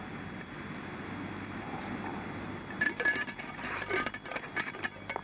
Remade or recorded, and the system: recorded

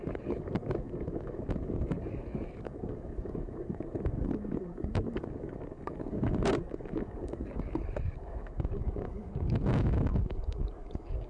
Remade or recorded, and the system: remade, codec, DAC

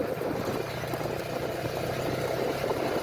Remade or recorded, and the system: recorded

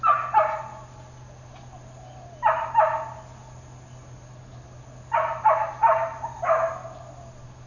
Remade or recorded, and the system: recorded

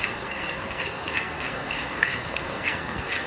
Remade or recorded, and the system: remade, codec, SNAC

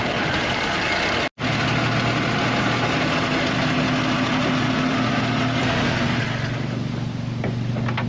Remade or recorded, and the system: recorded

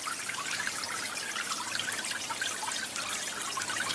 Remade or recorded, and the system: remade, vocoder, BigVGAN v2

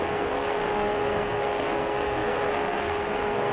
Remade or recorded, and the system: remade, codec, SNAC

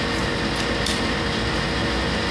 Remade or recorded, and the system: recorded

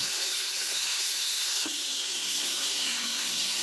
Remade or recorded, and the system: remade, codec, SNAC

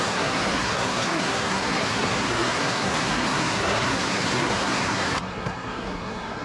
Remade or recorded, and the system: remade, codec, SNAC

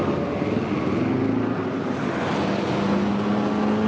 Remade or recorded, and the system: recorded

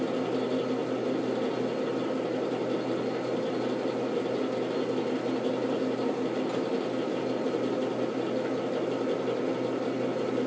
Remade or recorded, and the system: recorded